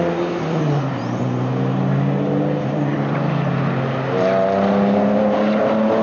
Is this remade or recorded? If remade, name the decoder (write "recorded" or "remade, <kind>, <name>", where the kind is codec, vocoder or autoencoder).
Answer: recorded